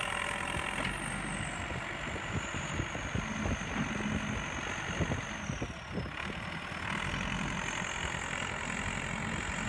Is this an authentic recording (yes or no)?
yes